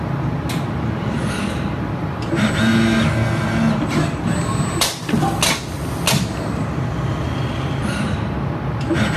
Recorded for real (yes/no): yes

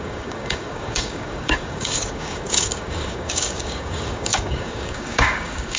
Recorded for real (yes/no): no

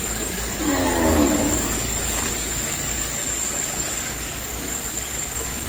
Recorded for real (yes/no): no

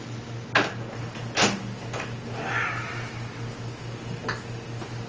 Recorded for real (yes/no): yes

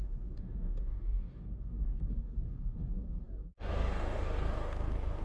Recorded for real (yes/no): no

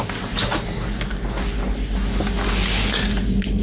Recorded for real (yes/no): yes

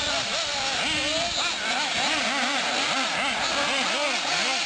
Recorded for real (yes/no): yes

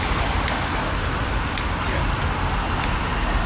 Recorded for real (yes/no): yes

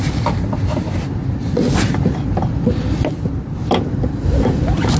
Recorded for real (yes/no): yes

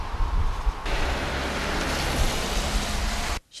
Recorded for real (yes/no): yes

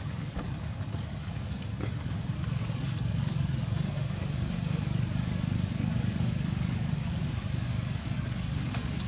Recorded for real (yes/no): no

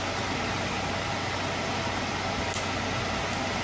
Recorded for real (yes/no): yes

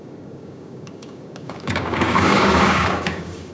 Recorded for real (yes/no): no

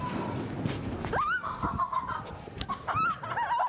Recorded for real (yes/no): yes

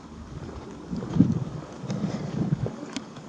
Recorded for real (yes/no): no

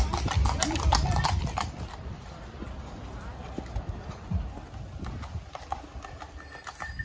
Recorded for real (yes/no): yes